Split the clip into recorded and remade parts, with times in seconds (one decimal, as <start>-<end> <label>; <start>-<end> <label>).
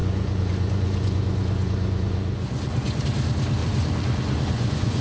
0.0-3.0 remade; 3.0-3.6 recorded; 3.6-5.0 remade